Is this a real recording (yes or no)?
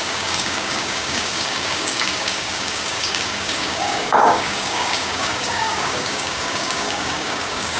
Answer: no